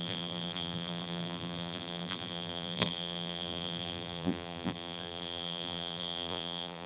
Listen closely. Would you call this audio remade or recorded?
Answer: remade